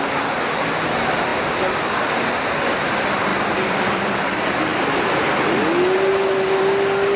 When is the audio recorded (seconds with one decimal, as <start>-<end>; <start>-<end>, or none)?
0.0-3.3; 4.1-7.2